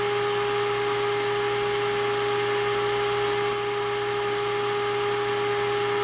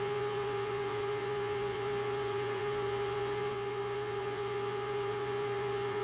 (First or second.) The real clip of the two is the first